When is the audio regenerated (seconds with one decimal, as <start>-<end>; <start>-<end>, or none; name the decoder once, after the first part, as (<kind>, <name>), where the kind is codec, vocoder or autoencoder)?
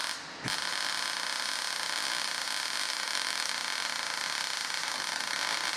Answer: 2.9-3.5 (autoencoder, DAC-VAE)